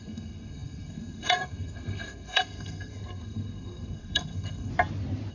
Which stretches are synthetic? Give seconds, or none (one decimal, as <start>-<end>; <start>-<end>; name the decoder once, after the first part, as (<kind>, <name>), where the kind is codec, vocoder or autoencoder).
0.0-4.7 (codec, SNAC)